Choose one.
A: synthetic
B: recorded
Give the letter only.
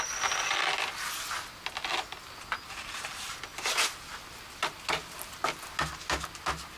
B